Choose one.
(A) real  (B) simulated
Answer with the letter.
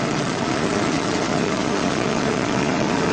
B